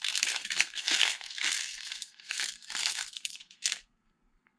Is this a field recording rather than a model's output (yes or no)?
no